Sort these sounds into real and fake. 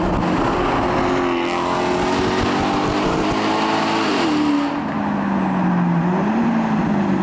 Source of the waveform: real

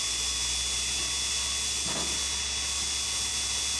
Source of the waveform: real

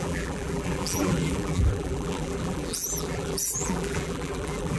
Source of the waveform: fake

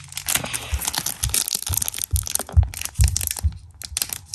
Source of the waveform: real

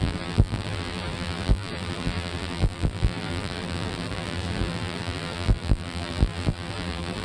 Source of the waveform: fake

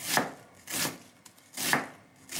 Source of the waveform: real